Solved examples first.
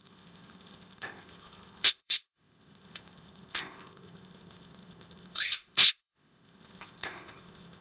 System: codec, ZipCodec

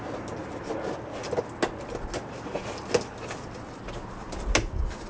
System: none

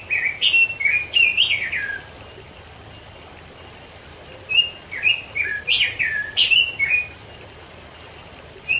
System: none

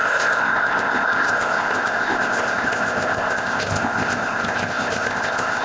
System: codec, ZipCodec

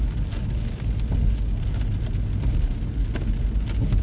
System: none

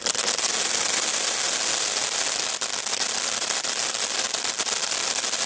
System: none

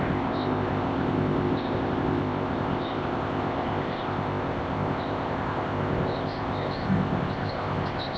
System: codec, ZipCodec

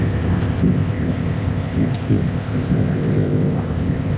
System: codec, ZipCodec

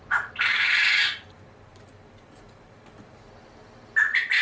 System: none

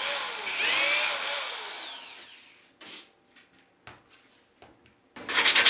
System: none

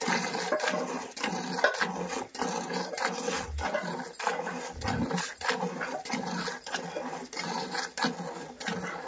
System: none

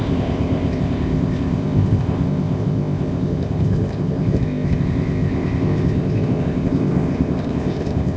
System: codec, ZipCodec